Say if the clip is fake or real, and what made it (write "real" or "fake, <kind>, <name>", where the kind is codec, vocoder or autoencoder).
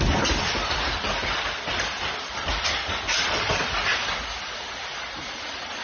real